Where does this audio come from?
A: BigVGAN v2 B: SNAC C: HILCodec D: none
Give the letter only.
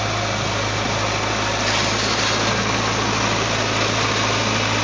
D